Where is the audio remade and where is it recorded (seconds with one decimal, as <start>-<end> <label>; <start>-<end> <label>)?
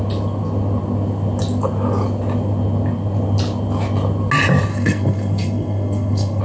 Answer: 0.0-4.7 recorded; 4.7-6.4 remade